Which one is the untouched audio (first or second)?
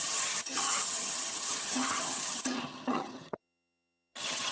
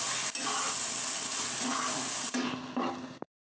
second